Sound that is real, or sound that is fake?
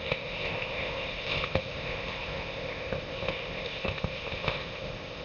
fake